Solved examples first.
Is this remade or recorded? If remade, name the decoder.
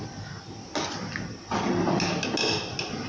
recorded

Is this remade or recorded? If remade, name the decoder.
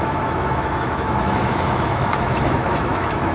remade, autoencoder, DAC-VAE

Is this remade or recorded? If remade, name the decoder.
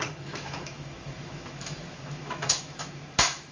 remade, autoencoder, DAC-VAE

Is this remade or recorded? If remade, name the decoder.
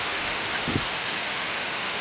remade, autoencoder, DAC-VAE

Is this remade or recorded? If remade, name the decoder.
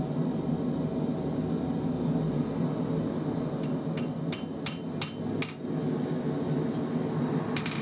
recorded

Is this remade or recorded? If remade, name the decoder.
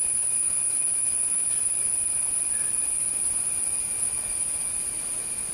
recorded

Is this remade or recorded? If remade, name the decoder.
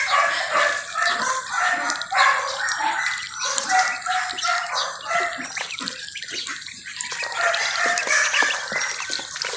recorded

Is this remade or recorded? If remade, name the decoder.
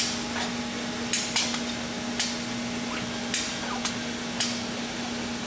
recorded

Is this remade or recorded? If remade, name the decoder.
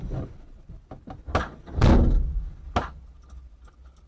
recorded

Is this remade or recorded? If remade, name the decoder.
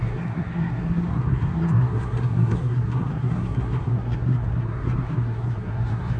remade, codec, SNAC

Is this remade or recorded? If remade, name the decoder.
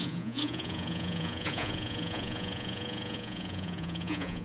remade, vocoder, Vocos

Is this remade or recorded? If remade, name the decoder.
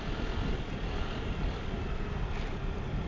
recorded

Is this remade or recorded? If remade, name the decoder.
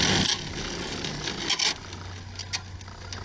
recorded